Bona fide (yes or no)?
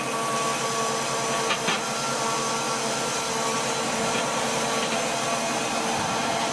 yes